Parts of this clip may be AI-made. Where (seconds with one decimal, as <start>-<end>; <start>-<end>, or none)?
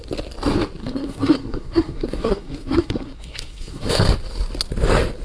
0.8-3.9